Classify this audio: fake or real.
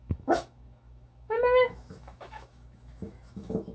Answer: fake